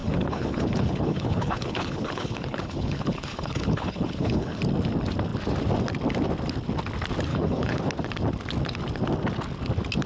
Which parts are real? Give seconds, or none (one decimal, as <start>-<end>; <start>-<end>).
4.6-7.3; 7.8-10.1